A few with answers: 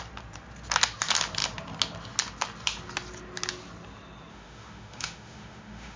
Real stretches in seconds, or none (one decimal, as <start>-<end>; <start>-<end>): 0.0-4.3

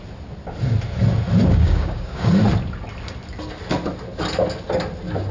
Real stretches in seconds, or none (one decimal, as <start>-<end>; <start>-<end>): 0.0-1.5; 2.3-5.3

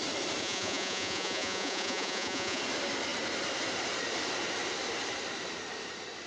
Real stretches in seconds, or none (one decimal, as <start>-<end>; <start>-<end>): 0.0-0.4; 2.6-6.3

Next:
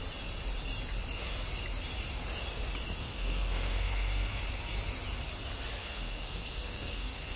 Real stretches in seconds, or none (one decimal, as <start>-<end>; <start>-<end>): 0.0-3.0; 4.4-5.8

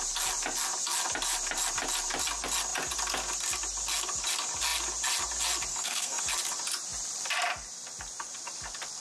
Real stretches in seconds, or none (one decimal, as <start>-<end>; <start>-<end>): 0.0-5.7; 6.2-9.0

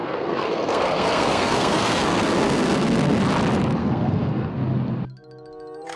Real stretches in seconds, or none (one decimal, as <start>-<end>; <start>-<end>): 3.2-3.8; 4.5-6.0

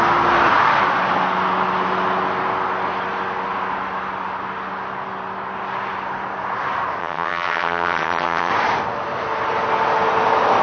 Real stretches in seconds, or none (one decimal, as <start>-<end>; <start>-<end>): 0.0-7.0; 8.5-10.6